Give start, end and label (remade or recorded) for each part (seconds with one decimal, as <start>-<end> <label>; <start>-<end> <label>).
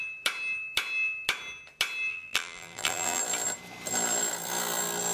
0.0-2.1 recorded; 2.1-3.2 remade; 3.2-5.1 recorded